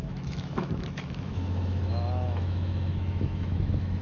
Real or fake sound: fake